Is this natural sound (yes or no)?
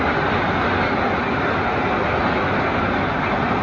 yes